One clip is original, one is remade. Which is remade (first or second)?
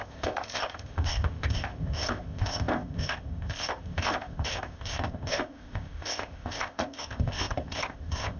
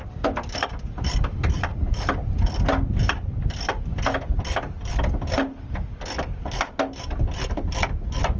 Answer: first